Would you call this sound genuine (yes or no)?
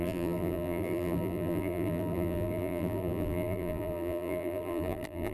no